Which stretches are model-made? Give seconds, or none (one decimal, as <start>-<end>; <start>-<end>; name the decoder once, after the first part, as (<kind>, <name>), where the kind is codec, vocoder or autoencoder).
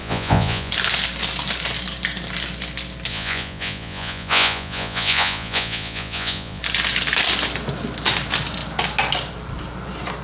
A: 0.0-0.7 (vocoder, Vocos); 3.1-6.6